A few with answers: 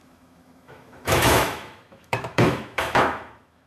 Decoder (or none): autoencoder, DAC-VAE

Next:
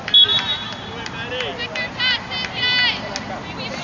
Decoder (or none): none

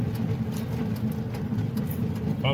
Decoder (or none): none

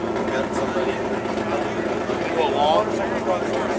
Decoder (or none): none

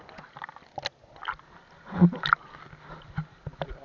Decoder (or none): none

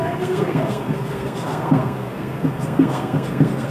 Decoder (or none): codec, SNAC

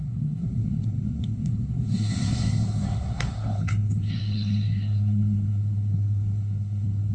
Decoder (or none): codec, SNAC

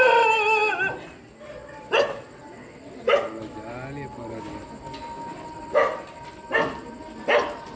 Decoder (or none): none